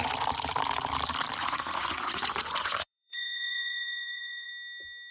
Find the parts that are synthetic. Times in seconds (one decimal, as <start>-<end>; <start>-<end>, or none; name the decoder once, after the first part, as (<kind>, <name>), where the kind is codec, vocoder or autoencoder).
1.4-4.5 (vocoder, Vocos)